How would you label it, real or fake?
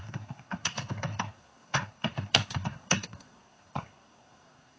fake